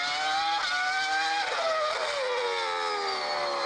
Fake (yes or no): no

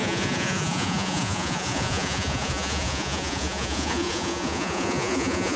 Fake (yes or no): yes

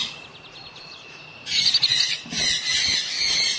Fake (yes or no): no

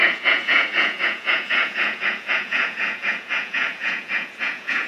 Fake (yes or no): yes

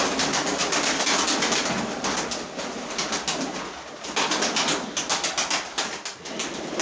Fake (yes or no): no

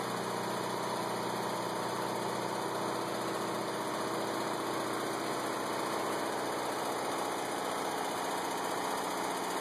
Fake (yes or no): no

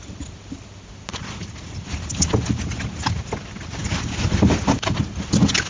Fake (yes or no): no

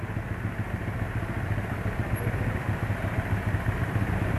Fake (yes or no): no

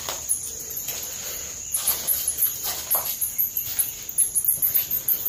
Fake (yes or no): no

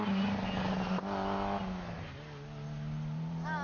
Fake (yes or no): no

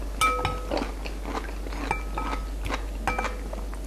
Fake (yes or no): no